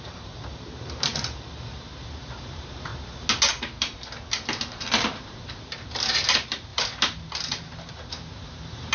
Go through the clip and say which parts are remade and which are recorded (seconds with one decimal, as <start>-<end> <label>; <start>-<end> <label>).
0.0-1.1 remade; 1.1-1.7 recorded; 1.7-2.9 remade; 2.9-3.5 recorded; 3.5-8.9 remade